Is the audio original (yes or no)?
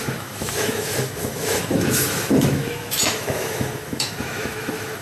no